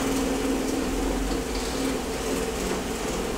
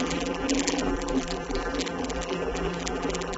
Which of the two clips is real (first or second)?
first